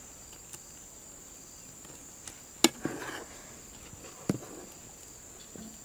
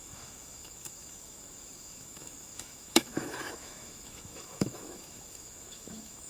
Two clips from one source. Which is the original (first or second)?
first